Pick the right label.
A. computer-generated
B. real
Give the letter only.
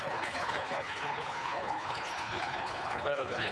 A